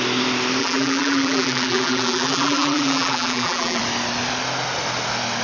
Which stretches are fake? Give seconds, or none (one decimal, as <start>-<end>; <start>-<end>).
0.6-3.8